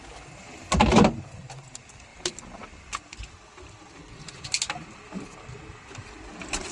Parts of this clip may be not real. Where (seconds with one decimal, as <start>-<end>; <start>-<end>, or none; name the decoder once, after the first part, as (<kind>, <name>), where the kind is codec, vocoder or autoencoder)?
none